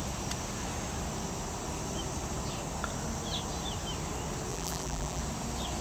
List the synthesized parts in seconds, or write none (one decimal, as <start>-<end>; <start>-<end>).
4.5-5.2